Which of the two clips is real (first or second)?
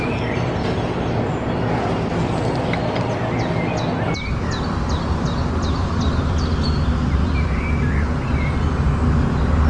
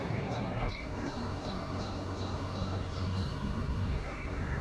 first